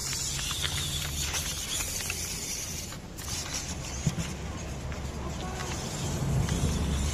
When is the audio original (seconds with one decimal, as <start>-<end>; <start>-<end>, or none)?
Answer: 0.0-5.6; 6.3-7.1